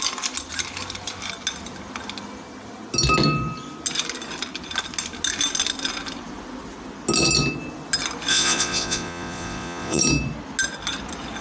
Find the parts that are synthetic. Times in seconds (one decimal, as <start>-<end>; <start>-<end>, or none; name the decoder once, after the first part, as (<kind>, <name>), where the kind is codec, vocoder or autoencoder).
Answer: 8.3-10.0 (vocoder, Vocos)